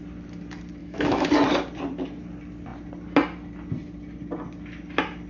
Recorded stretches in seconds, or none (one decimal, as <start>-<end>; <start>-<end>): 0.0-0.8; 1.3-5.3